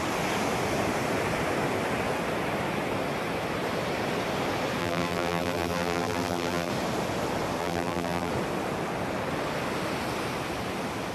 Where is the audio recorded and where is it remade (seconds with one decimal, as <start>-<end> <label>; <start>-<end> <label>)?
0.0-4.8 recorded; 4.8-6.7 remade; 6.7-7.6 recorded; 7.6-8.3 remade; 8.3-11.1 recorded